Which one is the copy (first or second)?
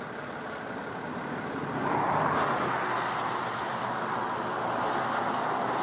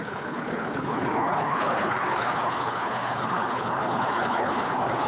second